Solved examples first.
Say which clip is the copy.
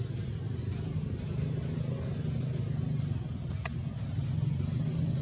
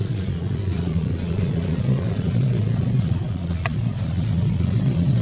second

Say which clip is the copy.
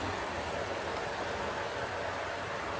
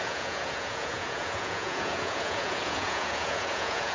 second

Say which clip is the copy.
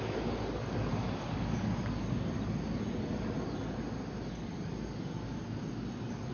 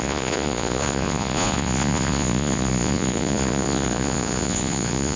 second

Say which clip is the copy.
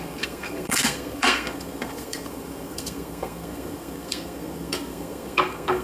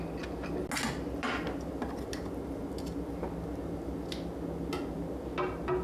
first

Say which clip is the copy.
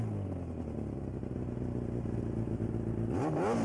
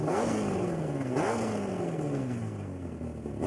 second